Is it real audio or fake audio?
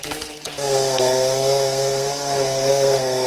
fake